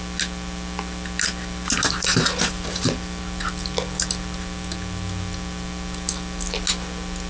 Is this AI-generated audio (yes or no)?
no